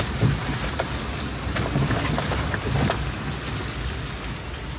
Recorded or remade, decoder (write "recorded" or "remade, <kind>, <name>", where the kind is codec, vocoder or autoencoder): recorded